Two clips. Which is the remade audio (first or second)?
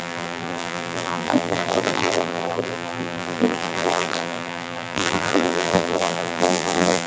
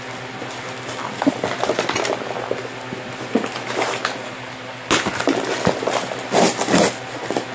first